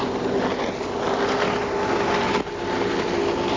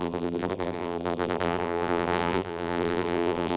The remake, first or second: second